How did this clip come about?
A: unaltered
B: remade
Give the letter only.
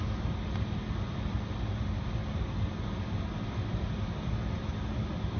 A